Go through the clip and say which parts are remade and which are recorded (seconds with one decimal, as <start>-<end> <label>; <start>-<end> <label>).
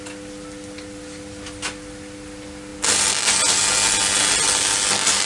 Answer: 0.0-5.3 recorded